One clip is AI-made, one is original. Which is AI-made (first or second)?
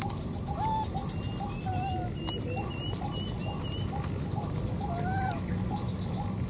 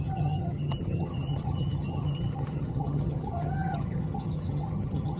second